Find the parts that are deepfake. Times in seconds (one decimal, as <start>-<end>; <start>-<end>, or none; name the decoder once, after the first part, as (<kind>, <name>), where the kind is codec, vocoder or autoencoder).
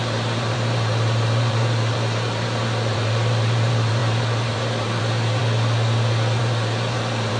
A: 0.0-5.4 (vocoder, BigVGAN v2); 6.4-7.4